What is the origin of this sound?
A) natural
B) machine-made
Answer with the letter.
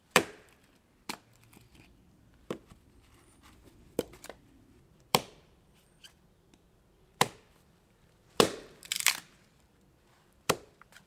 B